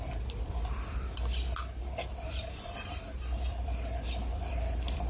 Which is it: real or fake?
fake